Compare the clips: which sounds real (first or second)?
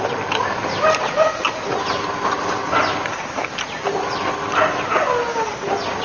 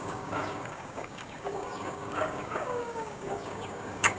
first